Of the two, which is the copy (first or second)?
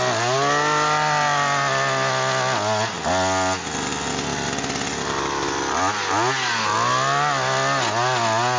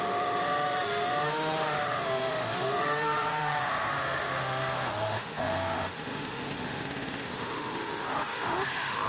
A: second